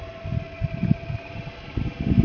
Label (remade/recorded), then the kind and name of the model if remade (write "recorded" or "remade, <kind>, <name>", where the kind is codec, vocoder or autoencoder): recorded